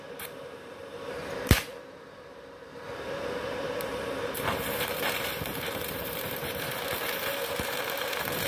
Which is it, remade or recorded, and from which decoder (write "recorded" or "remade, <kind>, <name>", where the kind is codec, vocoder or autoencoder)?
remade, vocoder, BigVGAN v2